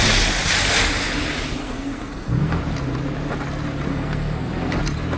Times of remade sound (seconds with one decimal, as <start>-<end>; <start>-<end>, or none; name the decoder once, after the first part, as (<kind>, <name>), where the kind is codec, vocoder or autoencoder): 1.6-2.6 (codec, SNAC); 3.9-4.8